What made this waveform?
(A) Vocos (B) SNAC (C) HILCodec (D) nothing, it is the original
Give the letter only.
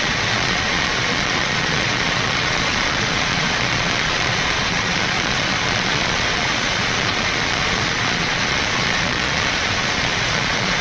A